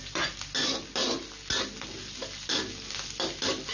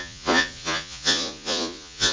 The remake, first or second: second